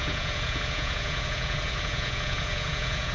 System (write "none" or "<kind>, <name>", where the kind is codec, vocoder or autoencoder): vocoder, Vocos